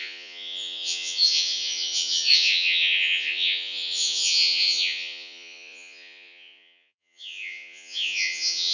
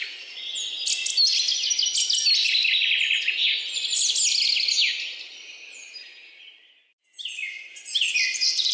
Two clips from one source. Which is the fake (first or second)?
first